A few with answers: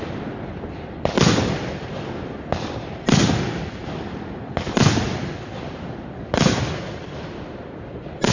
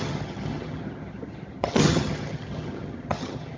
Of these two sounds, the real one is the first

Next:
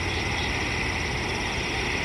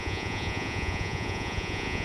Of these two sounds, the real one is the first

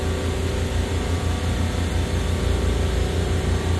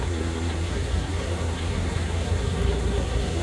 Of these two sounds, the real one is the first